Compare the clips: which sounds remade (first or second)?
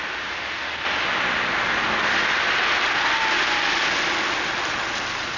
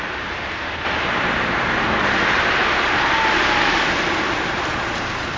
second